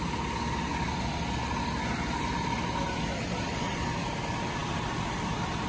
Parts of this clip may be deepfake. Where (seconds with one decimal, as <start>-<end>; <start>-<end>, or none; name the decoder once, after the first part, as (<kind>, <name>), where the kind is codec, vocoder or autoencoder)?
none